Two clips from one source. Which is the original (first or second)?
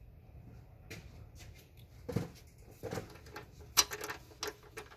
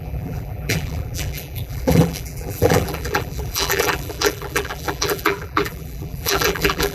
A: first